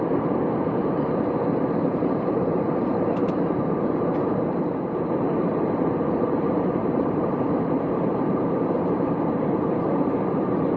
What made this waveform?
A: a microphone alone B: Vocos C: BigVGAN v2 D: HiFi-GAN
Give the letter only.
C